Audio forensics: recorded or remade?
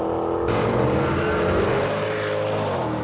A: recorded